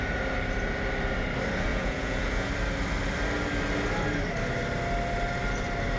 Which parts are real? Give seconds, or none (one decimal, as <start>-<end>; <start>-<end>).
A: 0.0-1.7; 2.5-6.0